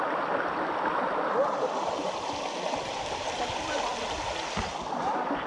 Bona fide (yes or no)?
yes